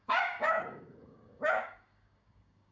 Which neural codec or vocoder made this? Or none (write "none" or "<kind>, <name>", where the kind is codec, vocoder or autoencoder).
codec, DAC